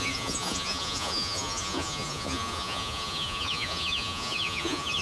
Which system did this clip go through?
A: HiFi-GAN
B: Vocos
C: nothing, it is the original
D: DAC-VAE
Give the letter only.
B